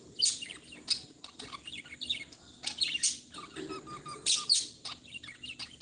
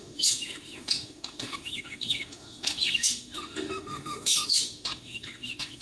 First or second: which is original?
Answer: first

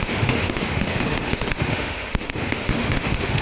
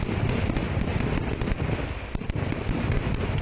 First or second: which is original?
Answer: second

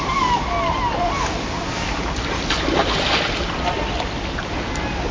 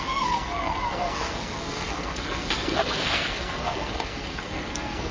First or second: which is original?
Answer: first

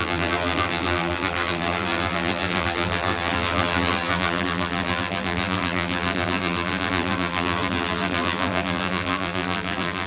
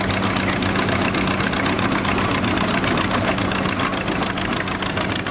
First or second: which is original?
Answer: second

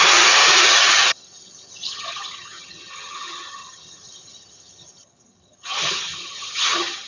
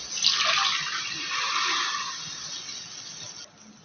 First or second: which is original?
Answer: second